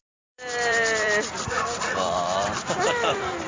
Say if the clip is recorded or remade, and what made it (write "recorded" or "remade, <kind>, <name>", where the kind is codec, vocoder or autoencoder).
remade, vocoder, BigVGAN v2